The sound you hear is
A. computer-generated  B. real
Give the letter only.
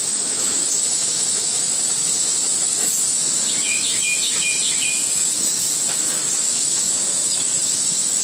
A